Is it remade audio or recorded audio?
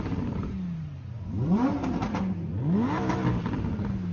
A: recorded